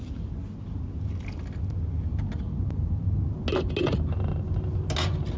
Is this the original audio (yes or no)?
yes